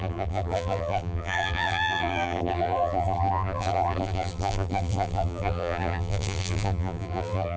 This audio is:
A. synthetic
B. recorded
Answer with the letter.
A